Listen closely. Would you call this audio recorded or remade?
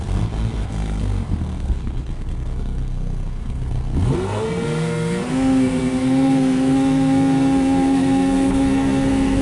remade